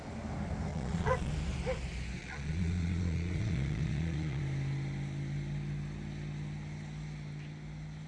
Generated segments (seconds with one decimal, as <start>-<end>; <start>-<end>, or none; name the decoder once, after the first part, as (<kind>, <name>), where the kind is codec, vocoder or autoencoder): 0.7-1.3 (vocoder, Vocos); 2.2-4.4